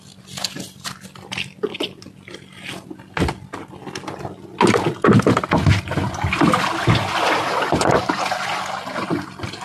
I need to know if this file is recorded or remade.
recorded